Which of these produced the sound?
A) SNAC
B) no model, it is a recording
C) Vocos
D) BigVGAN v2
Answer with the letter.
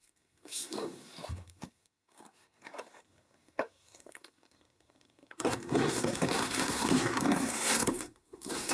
A